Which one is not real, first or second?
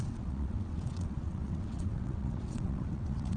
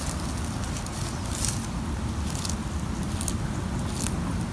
first